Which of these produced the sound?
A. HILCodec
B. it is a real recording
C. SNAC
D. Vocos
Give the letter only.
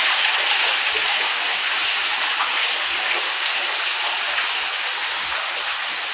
B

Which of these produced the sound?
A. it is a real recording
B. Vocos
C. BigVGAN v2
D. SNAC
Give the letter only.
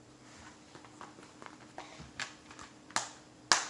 A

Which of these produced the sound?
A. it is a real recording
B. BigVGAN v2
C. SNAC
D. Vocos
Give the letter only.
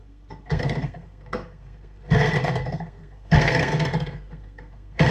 C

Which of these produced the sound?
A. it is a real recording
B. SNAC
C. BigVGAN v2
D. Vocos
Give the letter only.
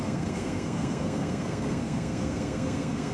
B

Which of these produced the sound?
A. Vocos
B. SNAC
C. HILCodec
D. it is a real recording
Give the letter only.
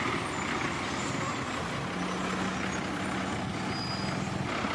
D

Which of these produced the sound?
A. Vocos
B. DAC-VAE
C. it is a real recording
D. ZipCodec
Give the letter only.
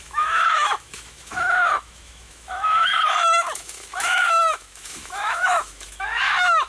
B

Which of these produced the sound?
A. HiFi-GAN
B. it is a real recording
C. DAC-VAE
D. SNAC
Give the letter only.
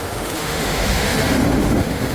C